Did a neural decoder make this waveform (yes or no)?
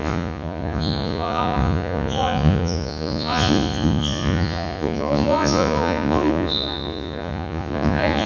yes